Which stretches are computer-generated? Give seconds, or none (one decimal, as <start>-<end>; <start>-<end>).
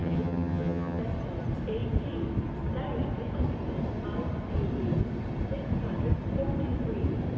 0.0-1.0